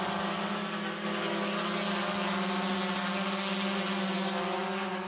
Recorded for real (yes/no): yes